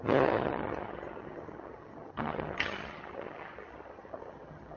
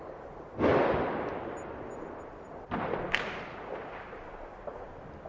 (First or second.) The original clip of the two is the second